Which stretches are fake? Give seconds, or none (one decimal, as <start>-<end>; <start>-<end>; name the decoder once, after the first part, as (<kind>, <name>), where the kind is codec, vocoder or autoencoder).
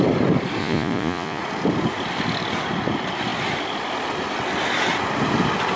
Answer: 0.6-1.4 (vocoder, Vocos)